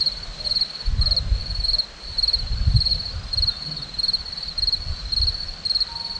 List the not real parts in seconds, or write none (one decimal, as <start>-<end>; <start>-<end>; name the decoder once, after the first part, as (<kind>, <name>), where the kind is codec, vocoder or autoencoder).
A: none